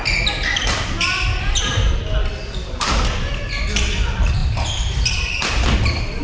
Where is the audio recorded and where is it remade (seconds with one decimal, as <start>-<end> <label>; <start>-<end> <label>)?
0.0-6.2 recorded